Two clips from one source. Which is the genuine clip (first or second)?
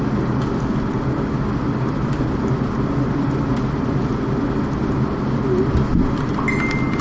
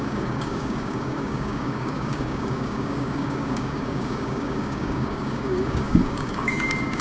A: first